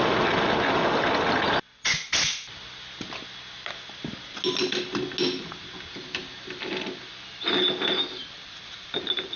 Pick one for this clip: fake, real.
real